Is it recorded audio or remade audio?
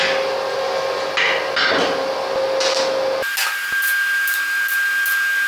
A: recorded